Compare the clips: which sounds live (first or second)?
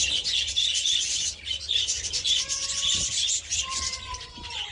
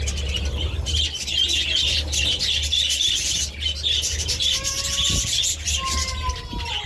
second